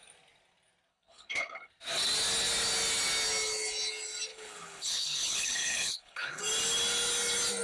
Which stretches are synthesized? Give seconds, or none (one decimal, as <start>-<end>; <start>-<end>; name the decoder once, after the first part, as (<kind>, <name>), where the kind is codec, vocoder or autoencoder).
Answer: 0.9-1.7 (codec, HILCodec); 4.3-6.4